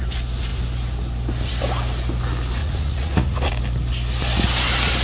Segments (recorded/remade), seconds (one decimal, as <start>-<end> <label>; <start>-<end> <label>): 0.0-2.6 recorded; 2.6-3.5 remade; 3.5-5.0 recorded